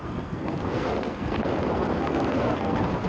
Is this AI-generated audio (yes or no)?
yes